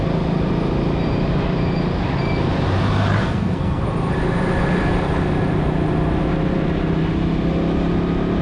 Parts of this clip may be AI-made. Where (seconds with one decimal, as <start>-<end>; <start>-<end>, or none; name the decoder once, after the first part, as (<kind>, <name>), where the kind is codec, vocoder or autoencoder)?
3.2-3.8 (codec, SNAC)